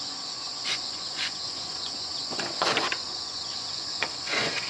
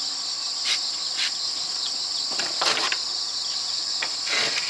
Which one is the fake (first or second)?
first